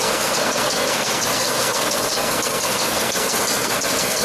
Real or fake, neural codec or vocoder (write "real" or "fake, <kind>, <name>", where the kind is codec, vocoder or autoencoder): fake, codec, SNAC